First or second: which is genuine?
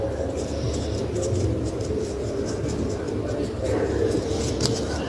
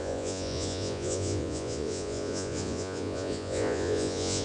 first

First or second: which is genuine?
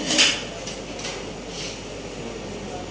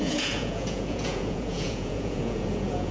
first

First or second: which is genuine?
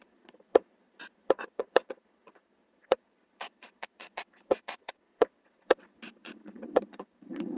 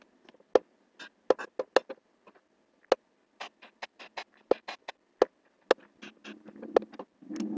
second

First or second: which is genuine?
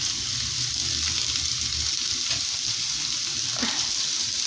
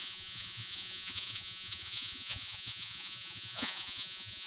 first